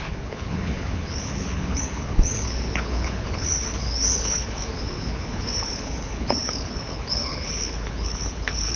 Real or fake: fake